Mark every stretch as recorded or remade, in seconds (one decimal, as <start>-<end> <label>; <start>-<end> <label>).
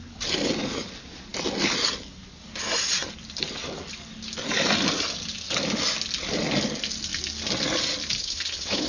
0.0-8.2 recorded; 8.2-8.9 remade